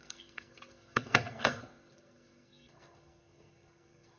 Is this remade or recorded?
remade